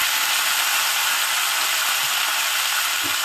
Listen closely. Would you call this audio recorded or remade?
recorded